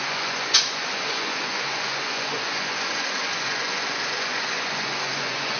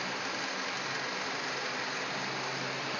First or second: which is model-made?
first